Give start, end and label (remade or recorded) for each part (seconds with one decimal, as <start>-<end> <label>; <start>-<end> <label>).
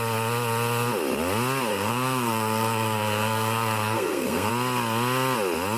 0.0-1.7 recorded; 1.7-4.5 remade; 4.5-5.8 recorded